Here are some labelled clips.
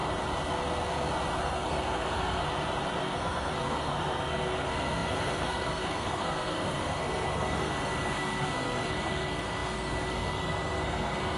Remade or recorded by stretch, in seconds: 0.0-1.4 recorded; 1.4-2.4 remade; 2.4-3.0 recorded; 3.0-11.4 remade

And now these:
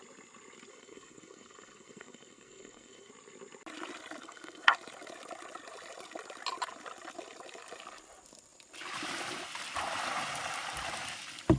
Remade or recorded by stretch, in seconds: 0.0-0.7 recorded; 0.7-3.1 remade; 3.1-4.2 recorded; 4.2-4.7 remade; 4.7-11.6 recorded